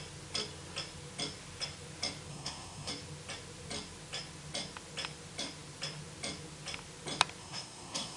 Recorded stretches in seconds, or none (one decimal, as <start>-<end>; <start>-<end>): 0.0-2.3; 2.9-7.4